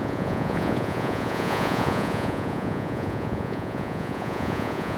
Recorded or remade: remade